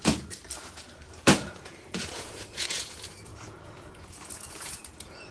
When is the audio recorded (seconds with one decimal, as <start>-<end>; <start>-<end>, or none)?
0.4-1.1